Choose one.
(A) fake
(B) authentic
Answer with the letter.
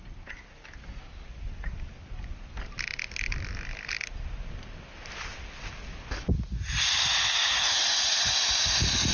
B